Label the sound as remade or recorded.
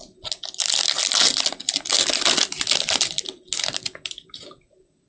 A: recorded